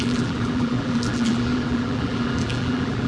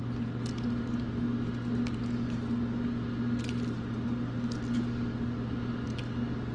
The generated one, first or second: first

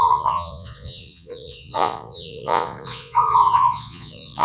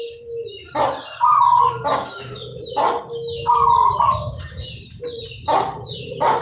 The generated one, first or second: first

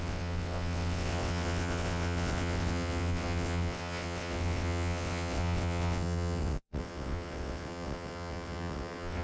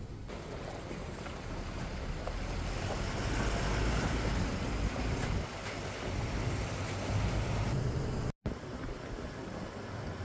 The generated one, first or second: first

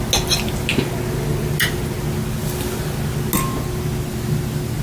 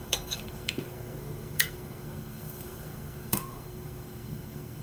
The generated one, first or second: second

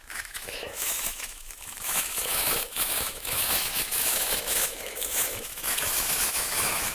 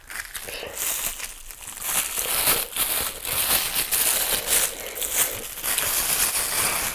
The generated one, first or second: first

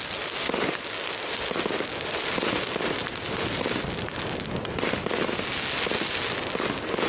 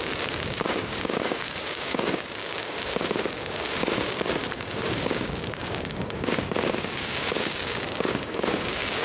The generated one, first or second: second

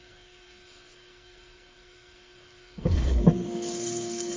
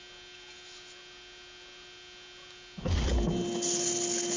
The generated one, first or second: first